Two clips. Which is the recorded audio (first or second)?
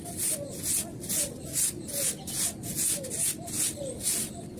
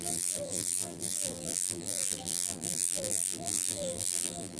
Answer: first